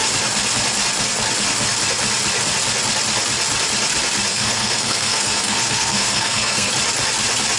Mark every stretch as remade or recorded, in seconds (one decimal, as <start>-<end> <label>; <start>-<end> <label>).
0.0-4.3 recorded; 4.3-6.7 remade; 6.7-7.6 recorded